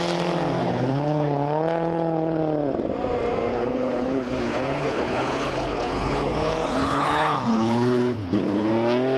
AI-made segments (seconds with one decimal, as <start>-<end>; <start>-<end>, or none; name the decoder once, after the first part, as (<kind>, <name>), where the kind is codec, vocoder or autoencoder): 0.6-2.4 (codec, HILCodec); 3.5-8.7